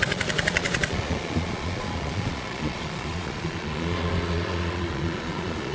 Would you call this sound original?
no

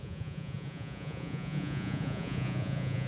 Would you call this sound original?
no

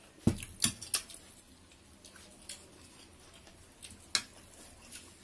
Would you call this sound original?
yes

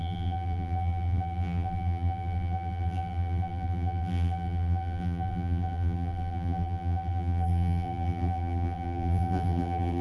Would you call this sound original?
no